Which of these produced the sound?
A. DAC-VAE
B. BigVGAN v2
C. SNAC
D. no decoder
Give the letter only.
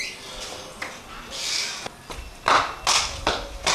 D